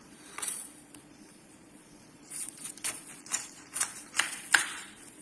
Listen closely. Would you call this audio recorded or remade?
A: remade